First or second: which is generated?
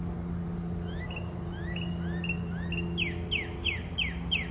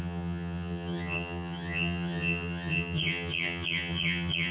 second